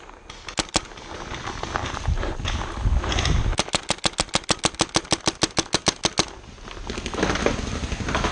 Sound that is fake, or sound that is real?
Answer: real